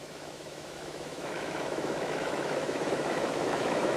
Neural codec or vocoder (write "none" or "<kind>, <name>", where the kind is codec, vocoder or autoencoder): autoencoder, DAC-VAE